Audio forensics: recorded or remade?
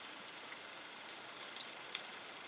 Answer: remade